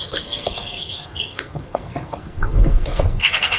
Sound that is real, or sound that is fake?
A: fake